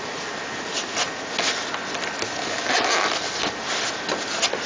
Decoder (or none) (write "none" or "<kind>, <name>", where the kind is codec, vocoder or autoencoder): none